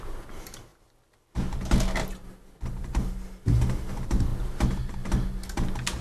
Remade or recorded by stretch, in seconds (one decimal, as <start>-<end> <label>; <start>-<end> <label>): 0.0-6.0 recorded